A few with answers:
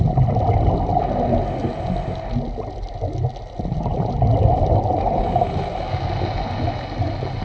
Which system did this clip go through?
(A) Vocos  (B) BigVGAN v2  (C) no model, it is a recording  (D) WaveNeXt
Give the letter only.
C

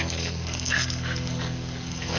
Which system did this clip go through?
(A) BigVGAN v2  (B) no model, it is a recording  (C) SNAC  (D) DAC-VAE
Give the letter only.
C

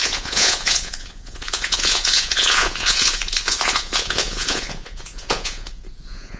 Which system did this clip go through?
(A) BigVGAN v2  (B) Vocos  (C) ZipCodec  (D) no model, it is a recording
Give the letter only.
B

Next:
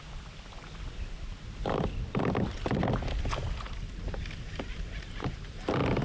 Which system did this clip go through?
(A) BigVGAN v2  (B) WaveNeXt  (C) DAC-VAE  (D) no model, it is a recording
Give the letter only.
D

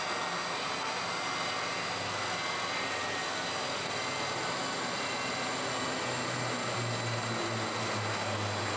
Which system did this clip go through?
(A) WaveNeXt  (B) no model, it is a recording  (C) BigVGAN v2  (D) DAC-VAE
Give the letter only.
B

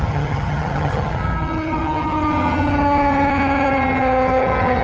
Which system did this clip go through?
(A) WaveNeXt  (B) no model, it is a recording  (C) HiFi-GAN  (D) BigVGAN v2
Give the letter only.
C